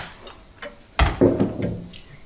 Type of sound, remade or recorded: recorded